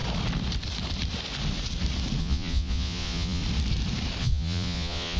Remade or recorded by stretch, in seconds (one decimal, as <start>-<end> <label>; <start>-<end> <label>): 0.0-2.2 recorded; 2.2-3.4 remade; 3.4-4.2 recorded; 4.2-5.2 remade